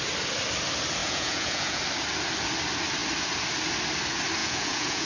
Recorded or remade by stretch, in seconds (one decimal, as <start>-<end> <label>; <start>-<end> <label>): 0.0-1.0 recorded; 1.0-1.8 remade; 1.8-4.4 recorded; 4.4-5.1 remade